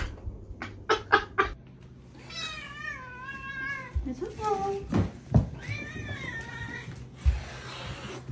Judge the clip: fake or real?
real